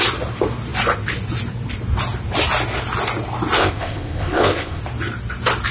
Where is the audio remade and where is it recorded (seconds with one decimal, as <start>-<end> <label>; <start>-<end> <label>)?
0.0-3.6 recorded; 3.6-4.8 remade; 4.8-5.7 recorded